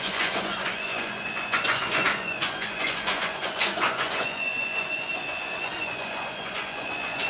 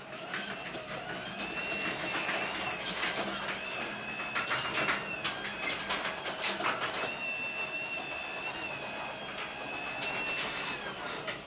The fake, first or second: first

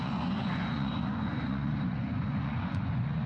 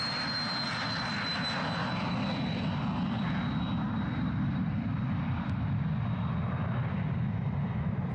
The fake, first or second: first